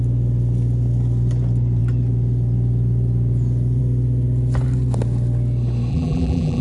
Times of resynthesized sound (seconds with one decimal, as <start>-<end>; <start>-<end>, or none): 5.9-6.6